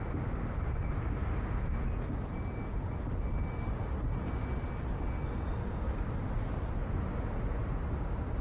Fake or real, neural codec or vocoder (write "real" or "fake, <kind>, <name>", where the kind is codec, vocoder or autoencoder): real